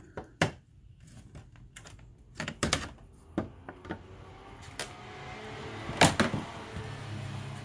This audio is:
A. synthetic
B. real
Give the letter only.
B